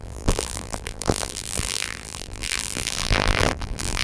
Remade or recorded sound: remade